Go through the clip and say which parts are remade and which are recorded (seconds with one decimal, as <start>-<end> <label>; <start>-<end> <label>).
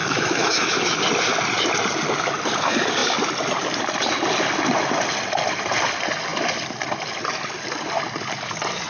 0.0-1.0 remade; 1.0-8.9 recorded